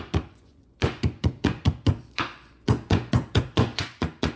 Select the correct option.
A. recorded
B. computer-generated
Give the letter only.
B